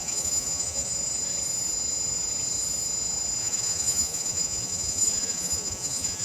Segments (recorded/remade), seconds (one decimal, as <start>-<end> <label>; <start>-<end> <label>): 0.0-0.9 remade; 0.9-3.4 recorded; 3.4-6.2 remade